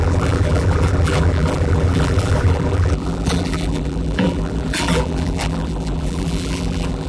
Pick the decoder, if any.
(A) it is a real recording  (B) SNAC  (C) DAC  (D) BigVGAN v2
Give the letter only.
D